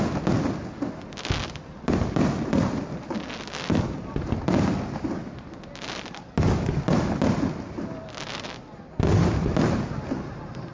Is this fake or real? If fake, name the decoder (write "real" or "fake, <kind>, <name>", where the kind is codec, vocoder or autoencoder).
real